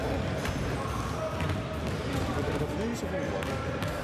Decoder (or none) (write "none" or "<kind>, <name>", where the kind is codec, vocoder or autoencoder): none